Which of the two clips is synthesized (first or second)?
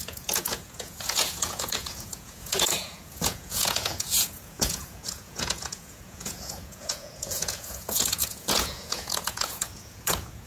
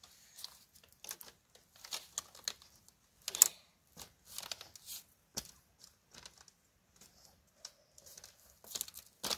first